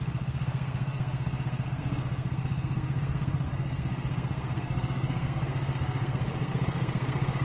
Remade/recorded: remade